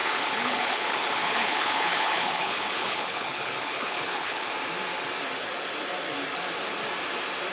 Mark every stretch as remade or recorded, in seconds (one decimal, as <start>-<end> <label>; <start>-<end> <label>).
0.0-4.5 remade; 4.5-7.5 recorded